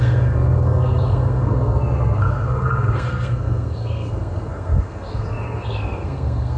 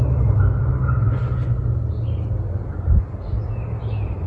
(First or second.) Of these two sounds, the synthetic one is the first